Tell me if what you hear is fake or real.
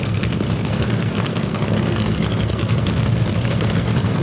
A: fake